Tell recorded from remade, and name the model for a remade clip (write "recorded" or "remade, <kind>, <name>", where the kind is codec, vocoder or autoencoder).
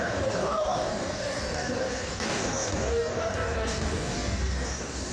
remade, codec, DAC